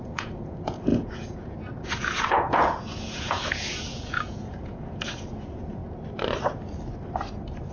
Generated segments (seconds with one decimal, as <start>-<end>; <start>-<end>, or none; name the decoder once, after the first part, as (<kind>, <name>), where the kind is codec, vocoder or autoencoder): 0.0-5.8 (vocoder, Vocos)